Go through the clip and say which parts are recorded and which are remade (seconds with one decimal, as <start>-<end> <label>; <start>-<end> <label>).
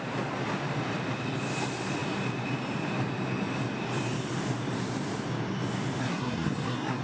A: 0.0-6.0 recorded; 6.0-7.0 remade